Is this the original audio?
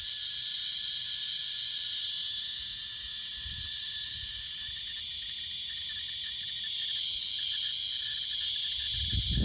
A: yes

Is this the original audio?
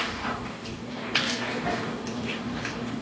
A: no